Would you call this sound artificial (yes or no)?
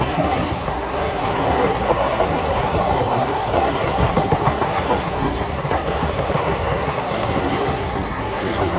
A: yes